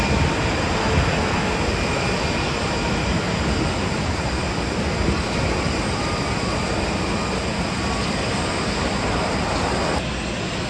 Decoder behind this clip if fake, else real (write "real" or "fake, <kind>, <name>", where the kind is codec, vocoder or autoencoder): real